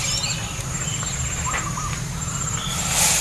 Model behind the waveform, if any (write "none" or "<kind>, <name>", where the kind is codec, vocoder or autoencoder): none